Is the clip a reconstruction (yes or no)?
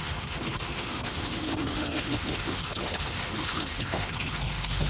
yes